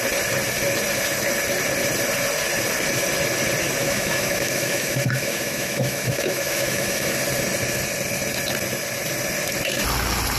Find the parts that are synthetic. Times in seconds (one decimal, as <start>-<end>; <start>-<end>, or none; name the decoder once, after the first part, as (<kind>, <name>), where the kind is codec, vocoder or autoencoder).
3.8-7.2 (autoencoder, DAC-VAE)